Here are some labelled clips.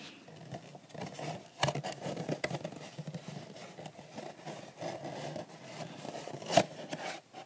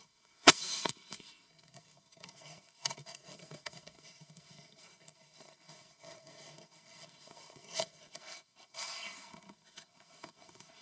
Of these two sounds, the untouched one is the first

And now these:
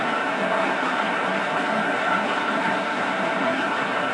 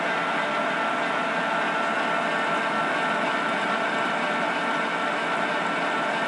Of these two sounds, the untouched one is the second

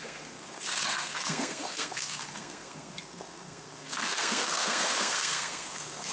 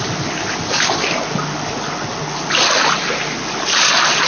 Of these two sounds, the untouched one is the second